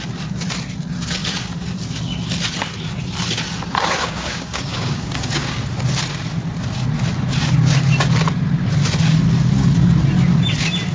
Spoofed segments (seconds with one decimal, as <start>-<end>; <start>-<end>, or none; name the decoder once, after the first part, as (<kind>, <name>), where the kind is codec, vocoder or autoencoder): 4.0-5.6 (codec, DAC)